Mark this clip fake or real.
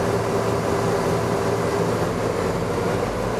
real